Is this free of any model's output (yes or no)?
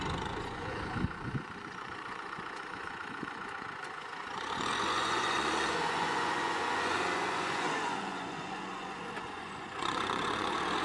no